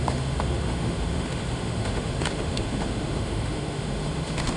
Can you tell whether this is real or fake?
fake